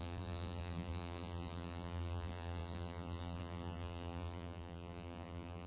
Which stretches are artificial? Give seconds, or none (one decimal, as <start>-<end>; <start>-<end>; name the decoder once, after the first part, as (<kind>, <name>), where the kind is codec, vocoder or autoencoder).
0.0-5.7 (vocoder, BigVGAN v2)

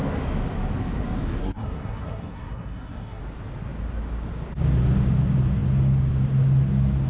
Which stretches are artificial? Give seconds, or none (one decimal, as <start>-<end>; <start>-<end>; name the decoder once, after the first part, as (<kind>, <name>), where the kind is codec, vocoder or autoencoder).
1.4-3.2 (codec, SNAC)

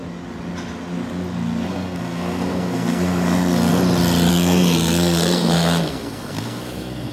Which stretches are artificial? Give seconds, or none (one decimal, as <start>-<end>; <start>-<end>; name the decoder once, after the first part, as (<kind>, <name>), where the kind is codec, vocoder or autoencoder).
1.7-3.7 (codec, SNAC); 4.3-7.1

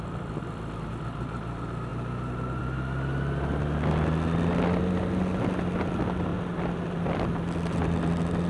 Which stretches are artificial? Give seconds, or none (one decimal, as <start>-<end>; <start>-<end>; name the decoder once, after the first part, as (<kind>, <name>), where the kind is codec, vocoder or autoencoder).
none